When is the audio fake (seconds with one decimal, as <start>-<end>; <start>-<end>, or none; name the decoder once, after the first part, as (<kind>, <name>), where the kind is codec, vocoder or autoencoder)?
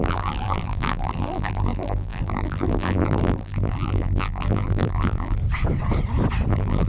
0.0-5.4 (vocoder, BigVGAN v2); 6.5-6.9